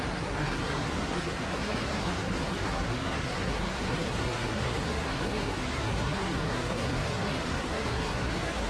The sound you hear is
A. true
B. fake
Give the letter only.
B